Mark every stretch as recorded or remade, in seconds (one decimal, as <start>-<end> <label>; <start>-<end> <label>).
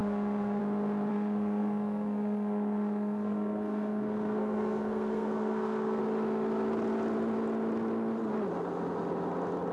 0.0-0.6 remade; 0.6-1.1 recorded; 1.1-6.0 remade; 6.0-9.7 recorded